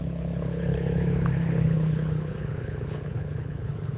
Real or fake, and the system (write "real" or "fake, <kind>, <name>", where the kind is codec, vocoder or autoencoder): fake, codec, HILCodec